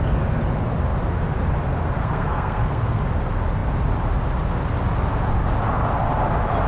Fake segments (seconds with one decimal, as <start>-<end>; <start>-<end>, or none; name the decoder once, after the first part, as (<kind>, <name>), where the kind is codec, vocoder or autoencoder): 2.0-3.0 (codec, SNAC)